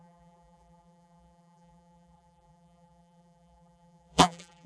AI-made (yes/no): yes